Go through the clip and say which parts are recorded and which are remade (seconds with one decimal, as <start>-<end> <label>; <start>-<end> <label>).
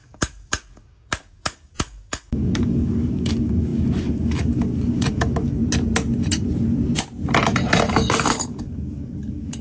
0.0-5.6 remade; 5.6-7.9 recorded; 7.9-9.6 remade